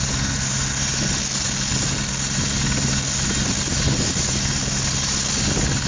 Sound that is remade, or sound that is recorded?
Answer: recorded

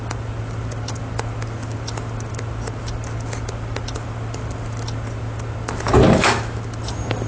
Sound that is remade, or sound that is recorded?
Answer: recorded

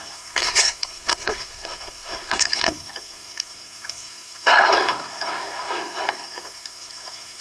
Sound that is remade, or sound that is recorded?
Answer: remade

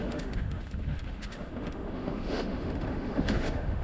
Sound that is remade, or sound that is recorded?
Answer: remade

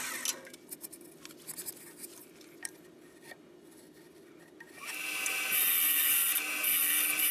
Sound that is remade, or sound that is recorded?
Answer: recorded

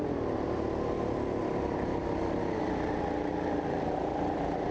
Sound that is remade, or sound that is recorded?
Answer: recorded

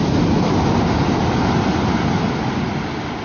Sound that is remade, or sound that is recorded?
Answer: recorded